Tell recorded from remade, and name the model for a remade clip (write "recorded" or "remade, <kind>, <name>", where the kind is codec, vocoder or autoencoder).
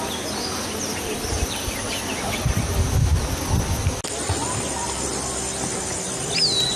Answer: recorded